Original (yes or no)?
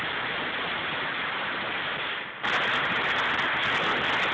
yes